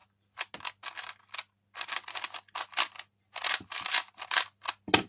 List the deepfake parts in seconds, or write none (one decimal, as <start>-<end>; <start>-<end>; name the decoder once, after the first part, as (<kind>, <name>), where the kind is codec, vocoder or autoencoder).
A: none